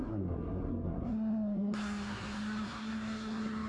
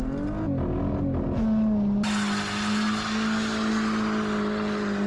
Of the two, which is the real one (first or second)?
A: second